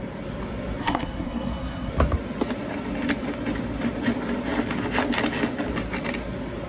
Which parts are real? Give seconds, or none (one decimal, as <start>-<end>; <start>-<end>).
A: 0.0-0.8; 1.9-6.7

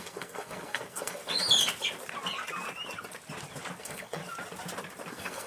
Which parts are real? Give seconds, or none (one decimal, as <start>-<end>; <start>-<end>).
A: 1.2-3.8; 4.2-5.1

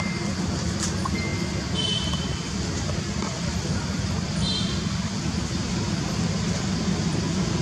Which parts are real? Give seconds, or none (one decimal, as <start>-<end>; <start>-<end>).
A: 0.0-7.6

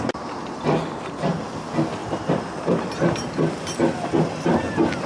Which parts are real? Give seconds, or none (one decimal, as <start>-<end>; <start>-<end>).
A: 0.0-5.1

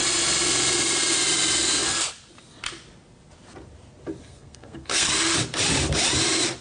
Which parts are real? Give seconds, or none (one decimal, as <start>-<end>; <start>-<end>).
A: 0.0-4.2; 5.1-6.6